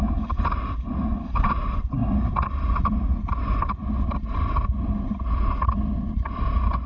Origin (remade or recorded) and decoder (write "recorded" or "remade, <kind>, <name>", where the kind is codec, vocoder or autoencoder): recorded